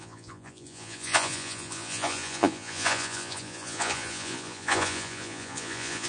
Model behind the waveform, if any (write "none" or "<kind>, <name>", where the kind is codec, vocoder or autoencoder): vocoder, Vocos